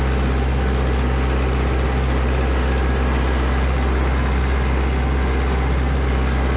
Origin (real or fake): real